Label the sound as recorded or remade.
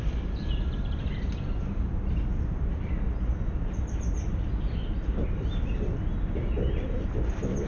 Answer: recorded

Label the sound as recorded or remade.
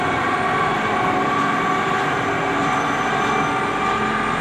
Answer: recorded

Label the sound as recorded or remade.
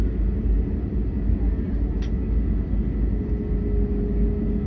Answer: recorded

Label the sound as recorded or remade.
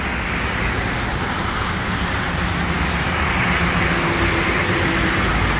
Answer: recorded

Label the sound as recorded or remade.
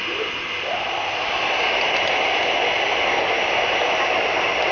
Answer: recorded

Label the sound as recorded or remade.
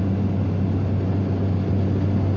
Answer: recorded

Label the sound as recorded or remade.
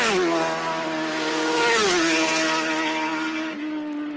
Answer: recorded